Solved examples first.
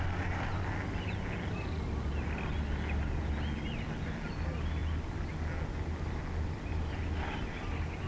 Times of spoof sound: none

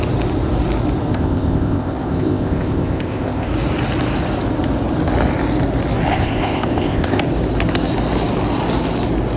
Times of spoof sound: 1.1-3.5 (codec, ZipCodec); 6.1-7.2

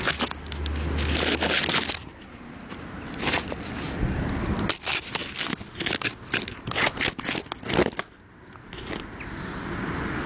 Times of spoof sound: 2.0-4.5 (vocoder, BigVGAN v2)

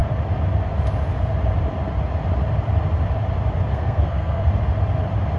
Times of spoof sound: 3.7-4.5 (codec, SNAC)

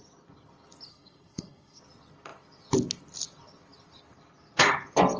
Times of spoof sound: 0.9-1.8 (codec, SNAC)

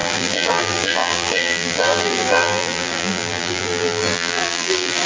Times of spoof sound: 0.0-5.1 (vocoder, BigVGAN v2)